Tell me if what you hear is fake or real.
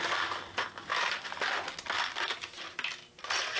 real